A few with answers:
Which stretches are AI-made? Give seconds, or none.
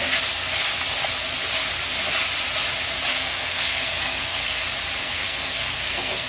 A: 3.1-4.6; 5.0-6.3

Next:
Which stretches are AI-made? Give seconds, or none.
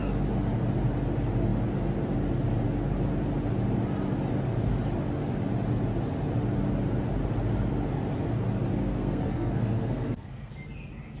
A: 8.8-10.5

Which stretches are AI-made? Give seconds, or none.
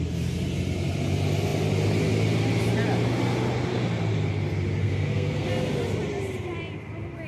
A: 4.8-5.5